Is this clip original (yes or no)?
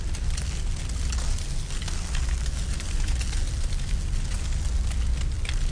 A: yes